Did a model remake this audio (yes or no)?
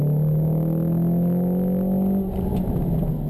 no